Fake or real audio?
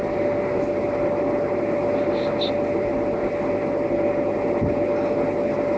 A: real